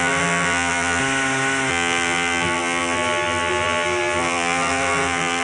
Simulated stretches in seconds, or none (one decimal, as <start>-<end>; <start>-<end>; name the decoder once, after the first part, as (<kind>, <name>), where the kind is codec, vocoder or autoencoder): 0.0-1.0 (vocoder, BigVGAN v2); 1.7-5.4